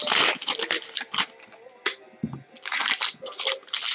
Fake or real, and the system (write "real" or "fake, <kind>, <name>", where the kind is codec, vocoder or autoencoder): real